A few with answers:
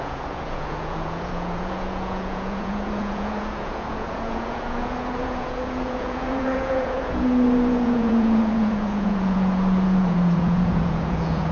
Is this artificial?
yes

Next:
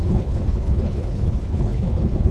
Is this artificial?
yes